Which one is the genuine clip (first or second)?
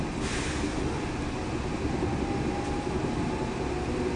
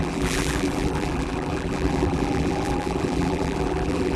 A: first